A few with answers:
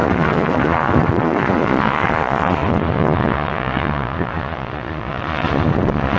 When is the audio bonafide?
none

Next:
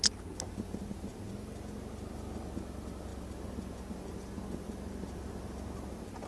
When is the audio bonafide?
0.0-6.3

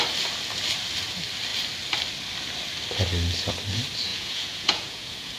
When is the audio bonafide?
0.0-4.1